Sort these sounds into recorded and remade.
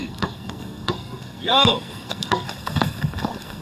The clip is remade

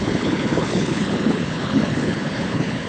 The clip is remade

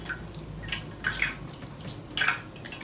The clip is recorded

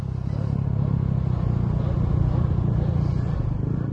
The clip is remade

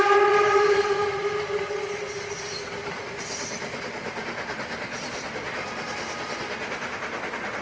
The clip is recorded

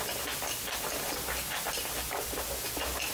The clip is recorded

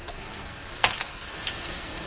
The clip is remade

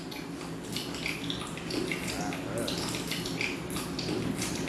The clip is recorded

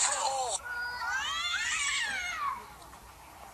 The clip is recorded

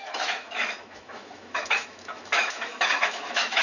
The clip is remade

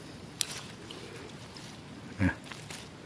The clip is recorded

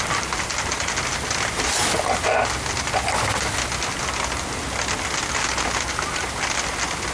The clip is recorded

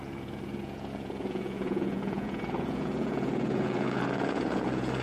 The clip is remade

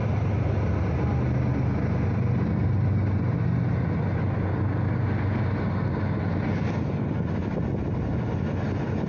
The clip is recorded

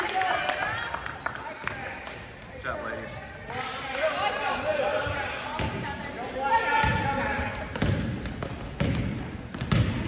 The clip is recorded